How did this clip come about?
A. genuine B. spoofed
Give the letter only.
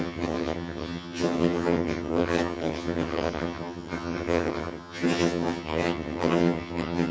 B